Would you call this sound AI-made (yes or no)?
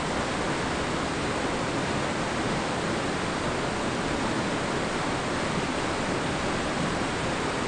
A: no